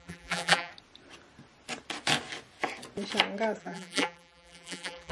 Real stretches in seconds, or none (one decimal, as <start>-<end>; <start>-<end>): 0.7-3.6